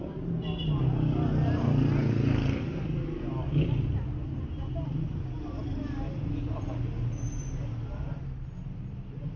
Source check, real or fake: real